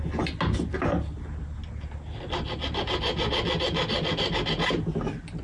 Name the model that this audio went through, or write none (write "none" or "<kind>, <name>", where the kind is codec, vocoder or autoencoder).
none